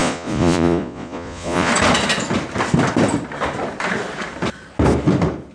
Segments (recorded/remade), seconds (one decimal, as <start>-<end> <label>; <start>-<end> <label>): 0.0-1.7 remade; 1.7-5.5 recorded